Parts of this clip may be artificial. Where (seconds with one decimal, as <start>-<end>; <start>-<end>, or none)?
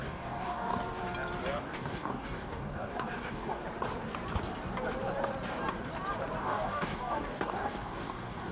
0.0-0.7; 1.6-3.6; 6.4-8.5